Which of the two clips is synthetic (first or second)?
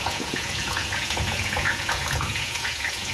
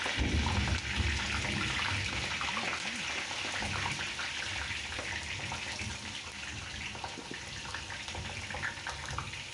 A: first